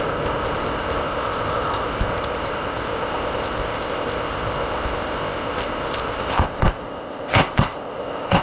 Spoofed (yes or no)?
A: yes